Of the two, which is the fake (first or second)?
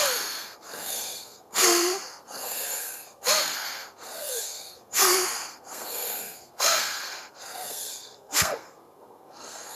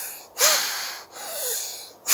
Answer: first